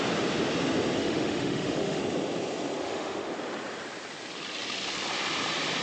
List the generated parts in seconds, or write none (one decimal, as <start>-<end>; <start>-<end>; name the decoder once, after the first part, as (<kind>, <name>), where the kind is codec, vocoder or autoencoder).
1.0-2.0 (autoencoder, DAC-VAE); 2.8-3.3